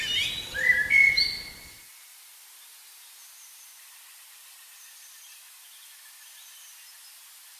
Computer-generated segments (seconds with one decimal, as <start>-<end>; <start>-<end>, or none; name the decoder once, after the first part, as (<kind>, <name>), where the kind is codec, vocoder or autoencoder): none